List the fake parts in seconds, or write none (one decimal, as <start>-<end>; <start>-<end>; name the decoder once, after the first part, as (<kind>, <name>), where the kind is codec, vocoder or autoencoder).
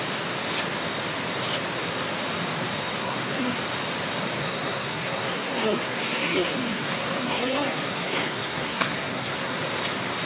3.0-3.6 (codec, SNAC); 4.4-9.6